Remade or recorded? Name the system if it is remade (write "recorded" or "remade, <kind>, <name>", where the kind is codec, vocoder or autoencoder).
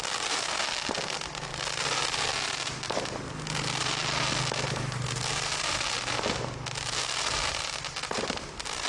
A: recorded